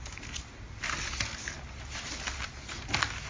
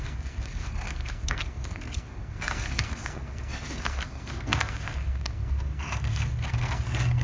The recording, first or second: first